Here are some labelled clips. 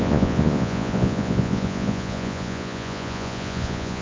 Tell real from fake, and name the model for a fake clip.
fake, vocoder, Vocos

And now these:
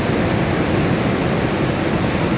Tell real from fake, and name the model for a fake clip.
real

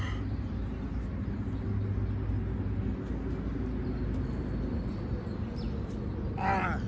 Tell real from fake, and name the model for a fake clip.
real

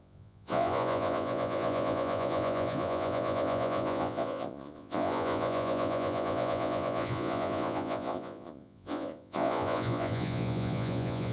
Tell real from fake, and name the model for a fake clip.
fake, vocoder, Vocos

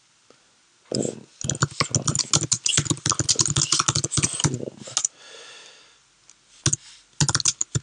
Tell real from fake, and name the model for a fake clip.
real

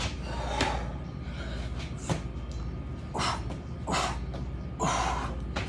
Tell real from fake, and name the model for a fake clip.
real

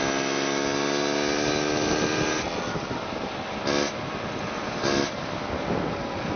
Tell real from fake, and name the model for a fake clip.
real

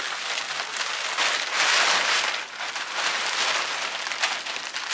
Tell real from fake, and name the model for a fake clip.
real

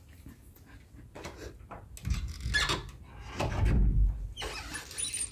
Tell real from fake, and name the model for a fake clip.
real